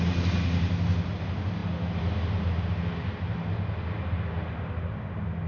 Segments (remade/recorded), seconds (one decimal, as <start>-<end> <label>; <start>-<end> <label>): 0.0-5.5 recorded